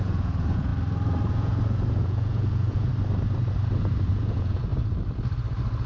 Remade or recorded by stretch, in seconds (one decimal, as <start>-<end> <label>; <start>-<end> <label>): 0.0-0.7 remade; 0.7-1.3 recorded; 1.3-2.9 remade; 2.9-4.1 recorded; 4.1-4.7 remade; 4.7-5.9 recorded